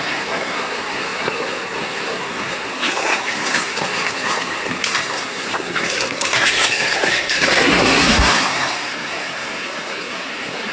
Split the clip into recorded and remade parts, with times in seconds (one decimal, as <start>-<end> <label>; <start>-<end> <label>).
0.0-10.7 remade